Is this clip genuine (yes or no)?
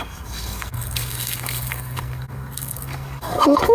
no